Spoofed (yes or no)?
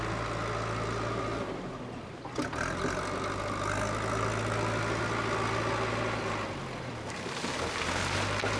no